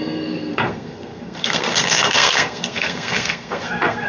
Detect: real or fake fake